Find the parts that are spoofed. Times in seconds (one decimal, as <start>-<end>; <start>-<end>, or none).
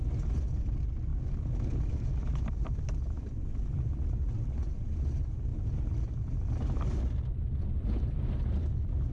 none